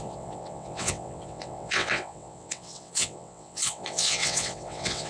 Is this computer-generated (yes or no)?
yes